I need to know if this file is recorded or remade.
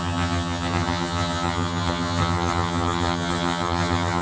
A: remade